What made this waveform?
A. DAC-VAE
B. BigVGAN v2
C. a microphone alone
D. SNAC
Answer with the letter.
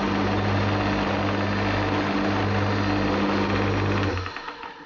C